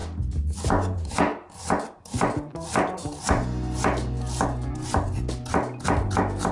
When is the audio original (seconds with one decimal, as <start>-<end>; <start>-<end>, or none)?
0.0-6.5